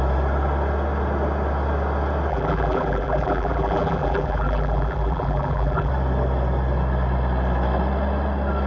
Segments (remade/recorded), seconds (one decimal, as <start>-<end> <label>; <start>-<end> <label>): 0.0-2.3 recorded; 2.3-5.9 remade; 5.9-8.7 recorded